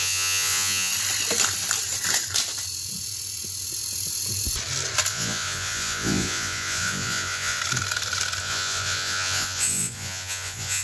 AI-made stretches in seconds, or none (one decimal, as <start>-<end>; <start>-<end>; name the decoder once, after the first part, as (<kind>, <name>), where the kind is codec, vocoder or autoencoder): 0.0-0.9 (vocoder, Vocos); 5.1-7.6; 8.4-10.8